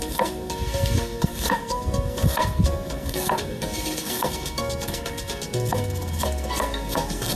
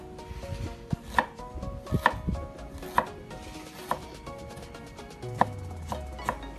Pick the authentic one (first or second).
second